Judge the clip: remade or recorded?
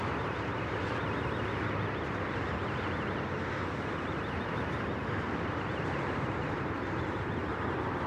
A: recorded